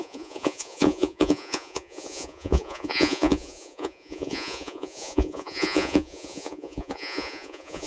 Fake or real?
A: fake